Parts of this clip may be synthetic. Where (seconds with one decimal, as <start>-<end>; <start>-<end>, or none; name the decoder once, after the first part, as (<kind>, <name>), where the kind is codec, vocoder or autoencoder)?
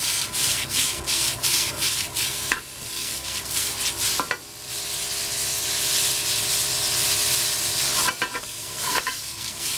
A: 0.0-3.7 (codec, SNAC); 8.4-9.8